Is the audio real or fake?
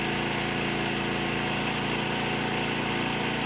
real